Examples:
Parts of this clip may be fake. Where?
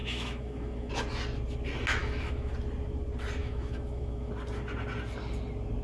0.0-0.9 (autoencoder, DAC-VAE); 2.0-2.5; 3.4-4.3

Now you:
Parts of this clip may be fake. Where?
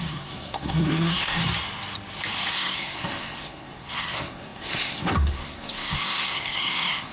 0.0-1.4 (codec, SNAC); 2.5-7.1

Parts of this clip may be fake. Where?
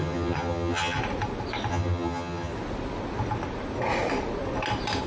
0.0-1.0 (vocoder, HiFi-GAN); 1.7-2.5